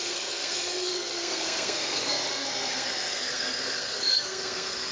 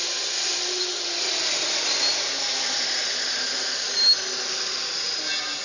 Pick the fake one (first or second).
first